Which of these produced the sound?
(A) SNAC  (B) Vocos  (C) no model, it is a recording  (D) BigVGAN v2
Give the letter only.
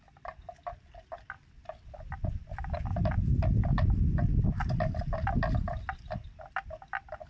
C